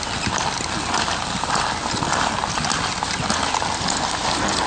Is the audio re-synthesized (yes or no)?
no